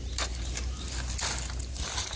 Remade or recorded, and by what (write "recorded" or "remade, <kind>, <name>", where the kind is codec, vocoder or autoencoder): recorded